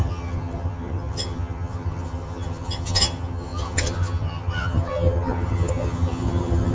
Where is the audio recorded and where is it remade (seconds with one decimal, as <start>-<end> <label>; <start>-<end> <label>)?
0.0-6.7 remade